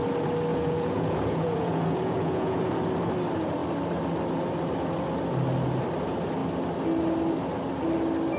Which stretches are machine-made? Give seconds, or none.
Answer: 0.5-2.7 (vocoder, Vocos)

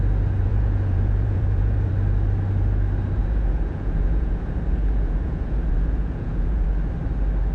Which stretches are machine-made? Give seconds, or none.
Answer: 0.4-1.9 (vocoder, Vocos); 3.2-6.7

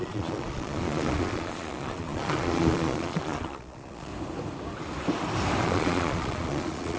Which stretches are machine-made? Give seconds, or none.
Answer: 0.0-4.1 (vocoder, Vocos); 5.6-7.0

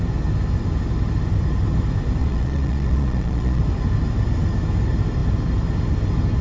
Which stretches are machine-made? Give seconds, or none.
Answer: 2.2-3.6 (vocoder, Vocos)

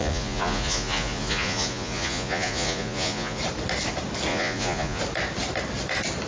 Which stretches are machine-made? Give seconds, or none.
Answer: 0.0-3.4 (vocoder, Vocos); 4.3-5.0

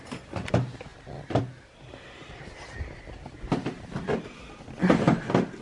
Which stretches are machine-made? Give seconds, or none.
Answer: none